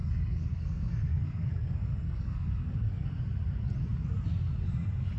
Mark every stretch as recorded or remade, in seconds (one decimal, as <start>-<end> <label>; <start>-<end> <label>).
0.0-3.1 remade; 3.1-5.2 recorded